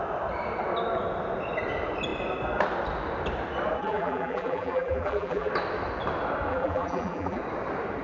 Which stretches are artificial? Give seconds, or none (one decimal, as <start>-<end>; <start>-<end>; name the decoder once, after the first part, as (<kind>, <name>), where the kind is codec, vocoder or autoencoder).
3.8-5.5 (vocoder, BigVGAN v2); 6.5-7.4